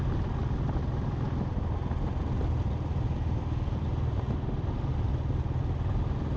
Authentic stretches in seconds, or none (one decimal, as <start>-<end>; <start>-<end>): 0.0-6.4